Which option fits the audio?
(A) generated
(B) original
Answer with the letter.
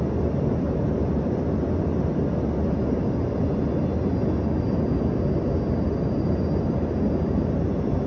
B